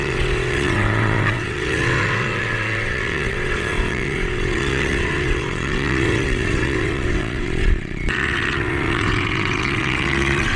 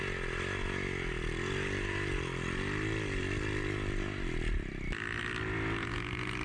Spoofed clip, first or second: first